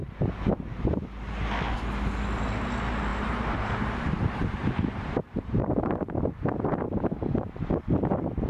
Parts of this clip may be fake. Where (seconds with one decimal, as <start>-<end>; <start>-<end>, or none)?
0.0-0.9; 3.1-7.7